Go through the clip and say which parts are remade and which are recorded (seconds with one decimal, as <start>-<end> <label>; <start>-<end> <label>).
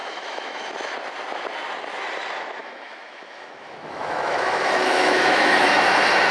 0.0-0.7 remade; 0.7-2.6 recorded; 2.6-5.7 remade; 5.7-6.3 recorded